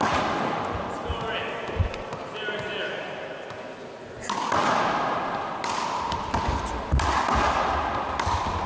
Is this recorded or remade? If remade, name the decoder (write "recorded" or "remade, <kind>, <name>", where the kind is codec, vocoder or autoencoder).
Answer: recorded